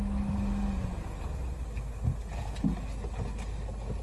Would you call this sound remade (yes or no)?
no